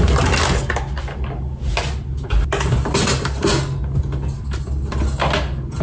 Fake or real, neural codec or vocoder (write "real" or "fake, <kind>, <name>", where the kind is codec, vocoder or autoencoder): real